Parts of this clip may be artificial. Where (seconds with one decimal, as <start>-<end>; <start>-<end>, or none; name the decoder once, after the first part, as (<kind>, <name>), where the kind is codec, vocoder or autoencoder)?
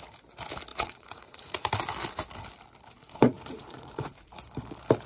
0.7-1.7 (vocoder, Vocos); 3.0-4.3